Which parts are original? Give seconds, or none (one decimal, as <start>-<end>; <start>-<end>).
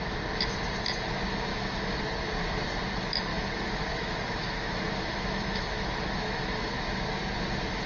0.0-1.5; 2.0-3.3; 6.7-7.9